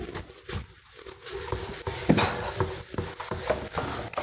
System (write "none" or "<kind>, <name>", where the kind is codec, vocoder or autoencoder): none